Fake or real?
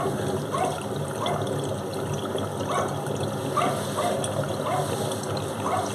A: real